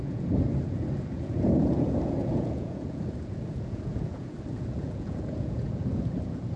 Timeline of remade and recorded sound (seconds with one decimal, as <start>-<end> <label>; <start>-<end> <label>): 0.0-6.6 remade